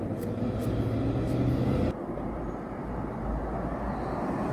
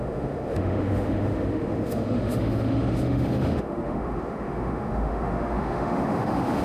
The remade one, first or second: second